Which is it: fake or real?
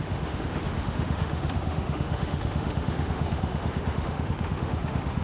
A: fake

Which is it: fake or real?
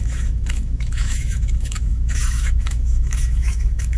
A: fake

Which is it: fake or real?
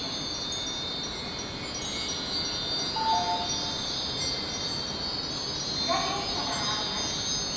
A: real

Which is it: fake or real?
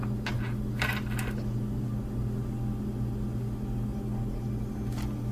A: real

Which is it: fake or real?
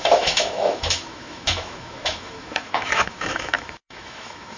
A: fake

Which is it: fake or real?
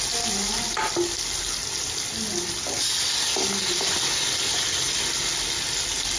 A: real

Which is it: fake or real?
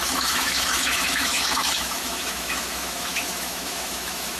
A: fake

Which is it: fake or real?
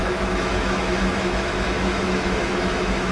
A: fake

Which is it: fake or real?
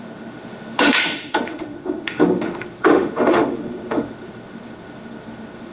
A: fake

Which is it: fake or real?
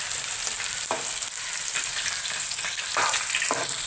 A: real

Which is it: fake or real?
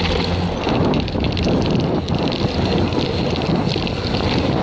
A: real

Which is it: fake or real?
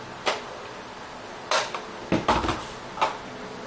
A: real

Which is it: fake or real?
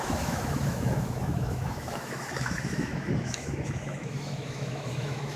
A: fake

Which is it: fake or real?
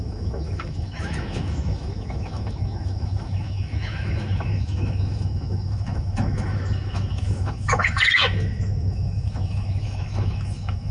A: fake